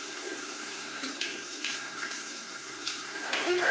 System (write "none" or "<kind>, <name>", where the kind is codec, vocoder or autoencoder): codec, SNAC